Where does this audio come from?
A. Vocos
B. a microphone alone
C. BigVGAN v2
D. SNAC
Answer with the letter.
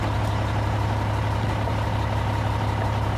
B